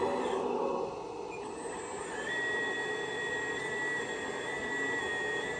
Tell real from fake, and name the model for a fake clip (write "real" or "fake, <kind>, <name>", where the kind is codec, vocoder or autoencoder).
real